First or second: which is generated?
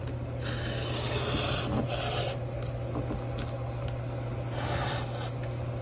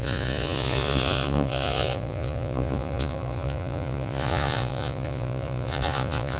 second